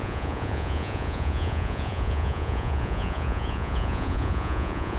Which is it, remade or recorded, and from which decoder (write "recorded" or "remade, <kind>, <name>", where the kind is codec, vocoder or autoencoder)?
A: remade, vocoder, Vocos